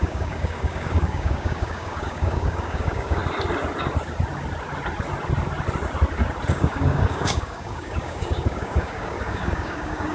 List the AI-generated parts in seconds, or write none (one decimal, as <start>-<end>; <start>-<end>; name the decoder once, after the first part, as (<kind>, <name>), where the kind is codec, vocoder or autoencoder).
0.0-3.2 (codec, DAC); 6.5-10.1

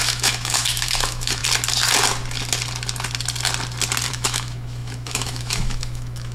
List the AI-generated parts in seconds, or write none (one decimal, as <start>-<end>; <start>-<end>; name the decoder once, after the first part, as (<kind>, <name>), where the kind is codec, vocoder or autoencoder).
0.0-1.4 (autoencoder, DAC-VAE); 4.1-6.3

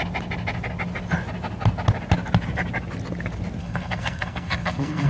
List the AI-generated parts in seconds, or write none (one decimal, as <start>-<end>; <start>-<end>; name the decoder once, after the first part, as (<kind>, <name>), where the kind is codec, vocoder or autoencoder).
3.6-5.1 (codec, SNAC)